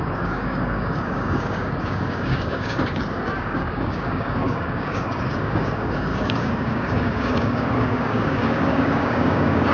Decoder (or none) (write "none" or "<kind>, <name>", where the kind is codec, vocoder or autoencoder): codec, DAC